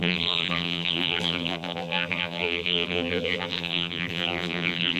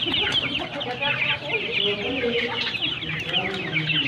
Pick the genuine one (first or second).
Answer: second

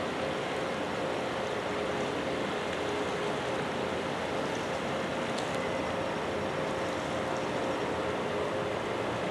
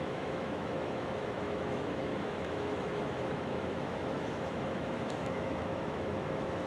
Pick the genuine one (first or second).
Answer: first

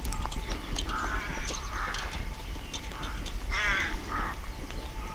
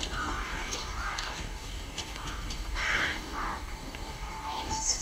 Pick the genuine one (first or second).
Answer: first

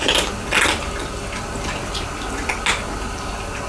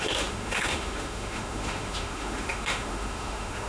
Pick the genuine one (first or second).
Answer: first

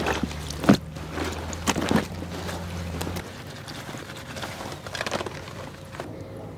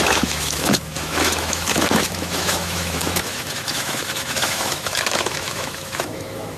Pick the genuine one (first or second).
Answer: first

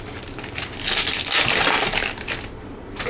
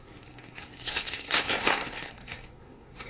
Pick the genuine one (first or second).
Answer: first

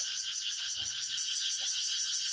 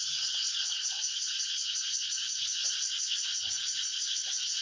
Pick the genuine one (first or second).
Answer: first